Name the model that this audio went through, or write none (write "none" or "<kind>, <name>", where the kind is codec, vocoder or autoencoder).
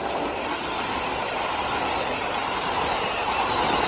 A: none